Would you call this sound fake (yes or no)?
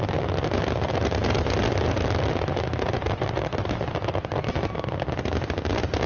no